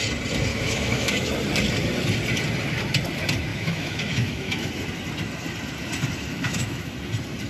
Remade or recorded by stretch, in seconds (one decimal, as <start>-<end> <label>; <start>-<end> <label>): 0.0-0.5 recorded; 0.5-1.3 remade; 1.3-3.5 recorded; 3.5-4.7 remade; 4.7-6.3 recorded; 6.3-6.9 remade; 6.9-7.5 recorded